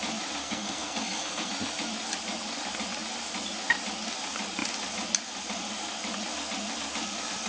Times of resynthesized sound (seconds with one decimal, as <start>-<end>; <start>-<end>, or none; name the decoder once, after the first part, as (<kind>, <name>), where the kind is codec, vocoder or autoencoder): 0.4-1.5 (codec, SNAC)